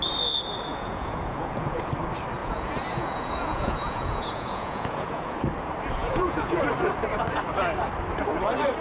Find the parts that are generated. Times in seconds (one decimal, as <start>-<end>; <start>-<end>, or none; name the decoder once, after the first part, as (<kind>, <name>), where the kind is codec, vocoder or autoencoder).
0.7-1.8 (vocoder, Vocos); 2.4-5.3; 6.0-6.6